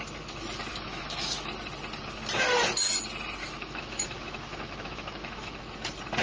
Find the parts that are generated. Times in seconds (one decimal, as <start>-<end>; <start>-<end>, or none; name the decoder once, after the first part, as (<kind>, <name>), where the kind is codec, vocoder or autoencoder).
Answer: 0.7-1.5 (autoencoder, DAC-VAE); 3.4-5.6